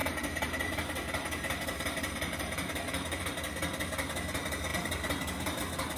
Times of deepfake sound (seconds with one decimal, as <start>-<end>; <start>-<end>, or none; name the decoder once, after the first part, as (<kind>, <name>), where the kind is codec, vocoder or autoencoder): 0.0-3.2 (vocoder, BigVGAN v2); 4.7-5.6